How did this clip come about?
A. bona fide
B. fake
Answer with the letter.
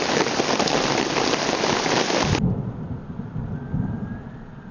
A